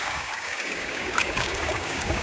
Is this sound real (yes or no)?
no